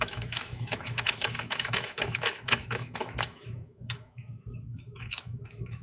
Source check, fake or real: fake